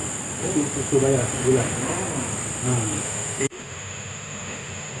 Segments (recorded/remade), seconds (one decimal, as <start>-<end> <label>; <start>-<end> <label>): 0.0-3.0 recorded; 3.0-5.0 remade